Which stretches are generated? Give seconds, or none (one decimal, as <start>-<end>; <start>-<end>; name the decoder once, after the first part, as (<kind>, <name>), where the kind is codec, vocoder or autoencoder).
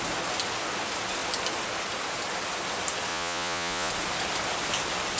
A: 3.1-3.9 (vocoder, Vocos)